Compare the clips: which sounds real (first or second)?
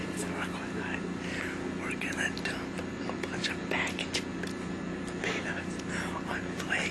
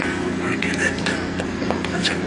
first